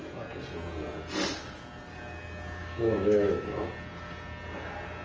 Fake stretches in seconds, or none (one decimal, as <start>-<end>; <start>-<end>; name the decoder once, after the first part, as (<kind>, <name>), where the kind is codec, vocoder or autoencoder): 2.6-3.7 (autoencoder, DAC-VAE)